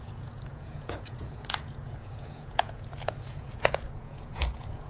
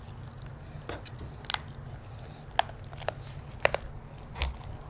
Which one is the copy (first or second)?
first